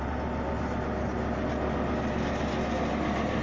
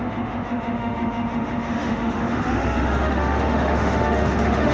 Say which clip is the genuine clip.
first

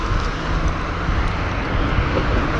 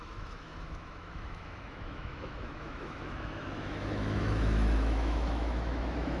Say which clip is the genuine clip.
first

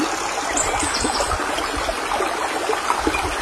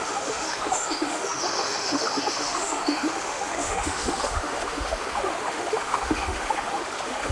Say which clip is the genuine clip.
first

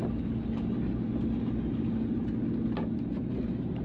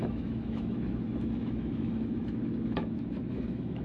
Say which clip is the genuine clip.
first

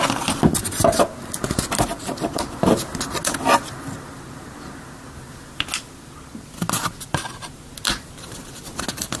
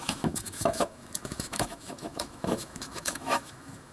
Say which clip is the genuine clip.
first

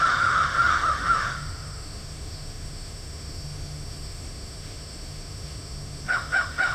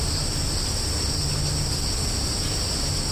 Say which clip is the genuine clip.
second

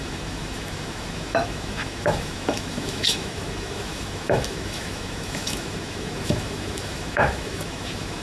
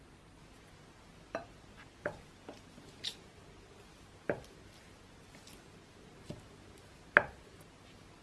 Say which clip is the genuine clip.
second